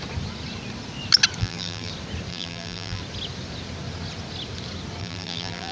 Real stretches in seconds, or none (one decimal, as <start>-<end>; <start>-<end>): 0.0-1.4; 1.9-2.3; 3.0-5.0

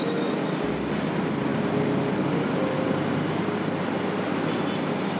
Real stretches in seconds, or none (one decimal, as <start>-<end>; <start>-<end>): 0.0-5.2

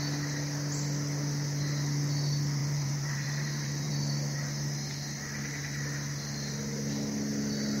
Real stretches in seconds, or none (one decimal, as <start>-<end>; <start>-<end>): 0.0-2.6; 3.9-7.8

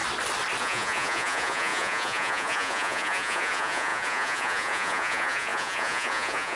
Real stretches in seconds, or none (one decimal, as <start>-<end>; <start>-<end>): 0.0-0.6

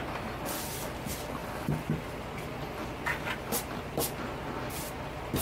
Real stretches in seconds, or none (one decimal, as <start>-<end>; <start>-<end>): 0.0-1.4; 4.6-5.4

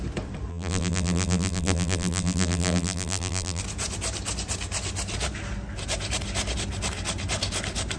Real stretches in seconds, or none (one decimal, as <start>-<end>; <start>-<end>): 0.0-0.5; 3.6-8.0